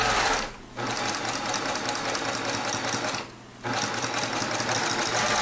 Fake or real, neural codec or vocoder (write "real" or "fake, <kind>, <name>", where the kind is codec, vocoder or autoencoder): real